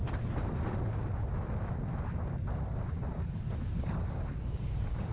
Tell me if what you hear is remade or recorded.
remade